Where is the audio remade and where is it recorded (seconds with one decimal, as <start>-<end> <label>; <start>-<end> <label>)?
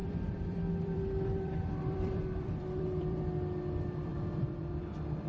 0.0-3.2 remade; 3.2-4.1 recorded; 4.1-4.8 remade; 4.8-5.3 recorded